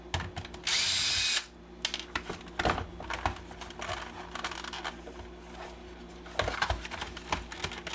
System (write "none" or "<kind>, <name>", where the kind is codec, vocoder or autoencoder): none